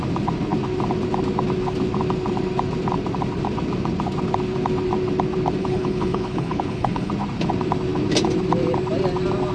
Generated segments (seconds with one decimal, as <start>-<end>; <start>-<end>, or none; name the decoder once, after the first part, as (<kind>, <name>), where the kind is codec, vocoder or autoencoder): 5.6-7.1 (codec, HILCodec)